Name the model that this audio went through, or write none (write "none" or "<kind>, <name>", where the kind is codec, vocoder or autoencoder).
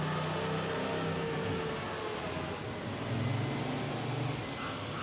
none